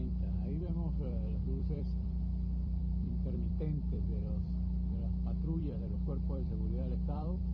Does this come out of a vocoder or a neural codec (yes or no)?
yes